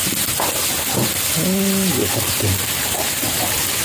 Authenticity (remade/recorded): recorded